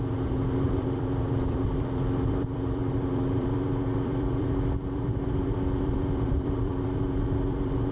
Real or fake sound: fake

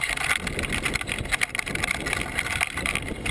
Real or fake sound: real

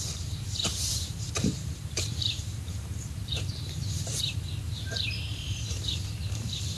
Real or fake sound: fake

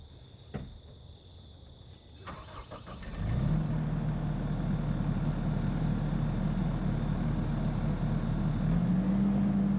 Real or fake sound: real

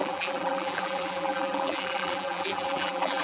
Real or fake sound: fake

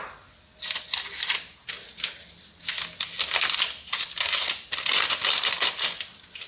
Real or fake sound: real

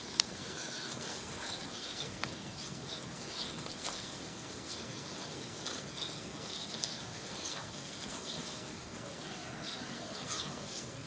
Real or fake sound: fake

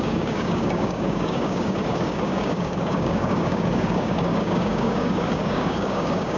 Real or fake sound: fake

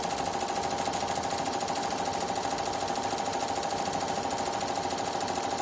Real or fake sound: real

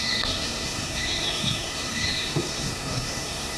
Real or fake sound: fake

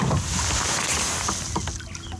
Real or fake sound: real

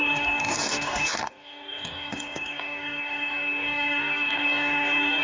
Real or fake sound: fake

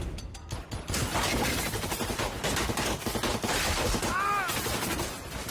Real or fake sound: real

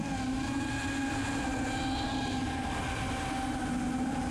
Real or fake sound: real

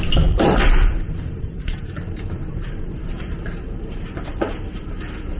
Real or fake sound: fake